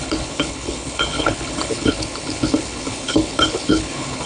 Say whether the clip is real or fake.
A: fake